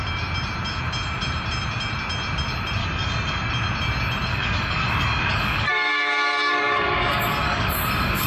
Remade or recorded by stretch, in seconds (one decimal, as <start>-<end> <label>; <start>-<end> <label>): 0.0-2.8 recorded; 2.8-3.5 remade; 3.5-4.3 recorded; 4.3-8.3 remade